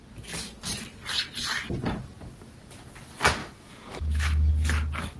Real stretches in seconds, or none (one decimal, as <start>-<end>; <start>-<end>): 0.0-3.4; 4.5-5.2